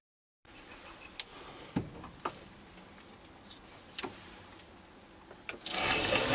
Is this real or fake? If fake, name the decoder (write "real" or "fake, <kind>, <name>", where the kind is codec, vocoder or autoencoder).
real